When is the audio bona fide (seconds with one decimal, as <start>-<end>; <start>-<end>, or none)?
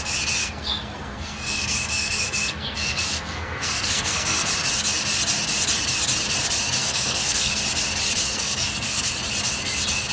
0.0-0.4; 4.5-6.8; 7.6-8.2; 9.1-10.1